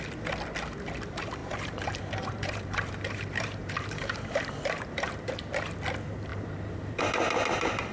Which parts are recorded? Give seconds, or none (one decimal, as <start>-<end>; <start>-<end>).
0.0-1.4; 5.3-6.3; 7.0-7.9